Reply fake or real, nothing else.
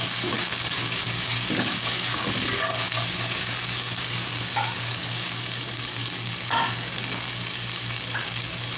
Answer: fake